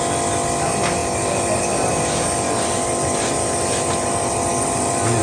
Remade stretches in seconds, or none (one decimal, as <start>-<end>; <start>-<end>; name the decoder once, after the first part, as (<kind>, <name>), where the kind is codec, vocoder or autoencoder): none

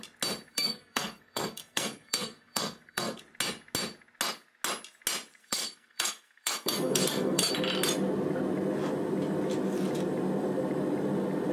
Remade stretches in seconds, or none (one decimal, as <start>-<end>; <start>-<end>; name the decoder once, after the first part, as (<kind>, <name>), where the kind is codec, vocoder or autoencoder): 0.5-3.2 (codec, SNAC); 5.4-7.5

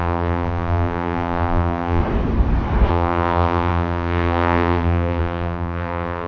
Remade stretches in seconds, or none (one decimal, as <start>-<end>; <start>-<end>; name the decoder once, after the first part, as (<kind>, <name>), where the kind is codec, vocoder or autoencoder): 0.0-2.0 (vocoder, BigVGAN v2); 2.9-6.3

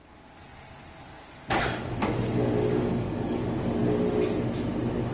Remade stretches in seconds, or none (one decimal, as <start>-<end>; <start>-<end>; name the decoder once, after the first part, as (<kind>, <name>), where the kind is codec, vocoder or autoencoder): 1.6-2.0 (codec, DAC); 2.7-3.4

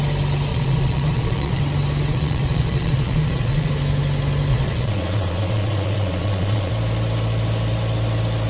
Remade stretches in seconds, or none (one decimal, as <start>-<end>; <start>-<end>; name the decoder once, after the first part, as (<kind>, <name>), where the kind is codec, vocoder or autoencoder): 0.5-1.6 (vocoder, Vocos); 2.1-3.7; 4.5-6.7